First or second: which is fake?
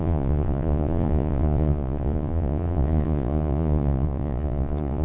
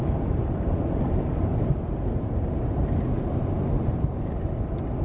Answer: first